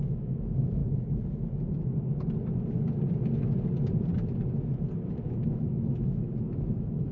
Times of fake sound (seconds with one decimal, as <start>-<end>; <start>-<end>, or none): 0.0-0.8; 5.1-7.1